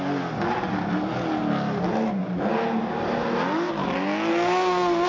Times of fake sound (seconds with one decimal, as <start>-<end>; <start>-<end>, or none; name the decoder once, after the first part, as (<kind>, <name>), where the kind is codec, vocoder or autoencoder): 4.3-5.1 (codec, SNAC)